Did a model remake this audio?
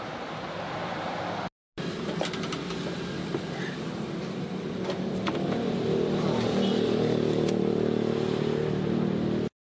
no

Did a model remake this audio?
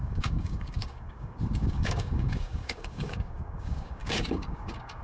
yes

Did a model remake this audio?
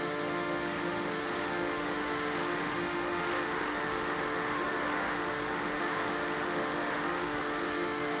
yes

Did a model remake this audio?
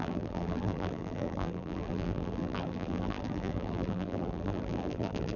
yes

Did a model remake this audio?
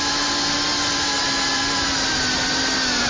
no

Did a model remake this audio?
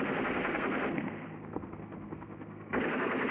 yes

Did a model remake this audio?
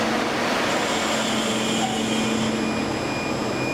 no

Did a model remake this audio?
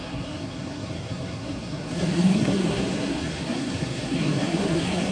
yes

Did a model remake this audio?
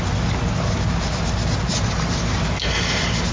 no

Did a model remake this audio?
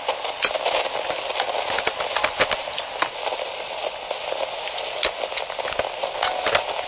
no